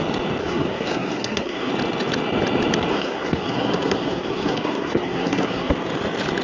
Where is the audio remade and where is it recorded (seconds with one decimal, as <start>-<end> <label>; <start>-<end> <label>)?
0.0-0.4 recorded; 0.4-1.7 remade; 1.7-2.9 recorded; 2.9-5.7 remade; 5.7-6.4 recorded